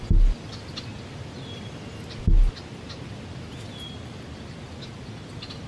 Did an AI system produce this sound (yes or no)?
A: no